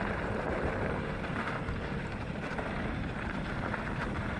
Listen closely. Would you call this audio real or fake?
fake